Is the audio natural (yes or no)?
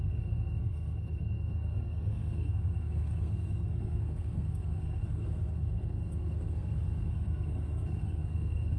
no